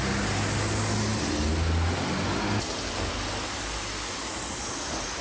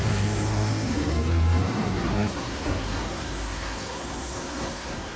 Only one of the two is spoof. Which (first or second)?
second